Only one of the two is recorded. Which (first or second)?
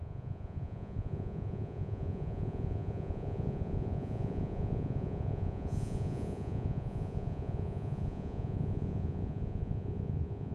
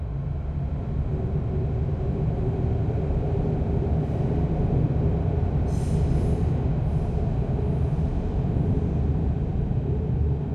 second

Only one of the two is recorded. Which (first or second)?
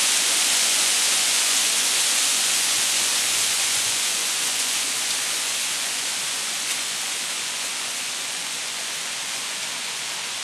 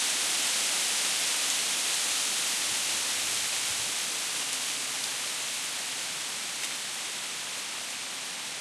second